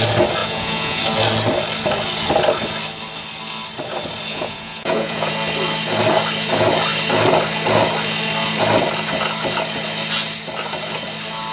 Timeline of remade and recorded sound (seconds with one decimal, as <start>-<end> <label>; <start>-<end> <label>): 0.0-0.4 recorded; 0.4-1.0 remade; 1.0-4.3 recorded; 4.3-5.3 remade; 5.3-11.5 recorded